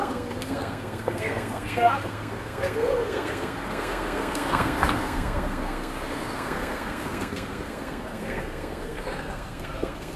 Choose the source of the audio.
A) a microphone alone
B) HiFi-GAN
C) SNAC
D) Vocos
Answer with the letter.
C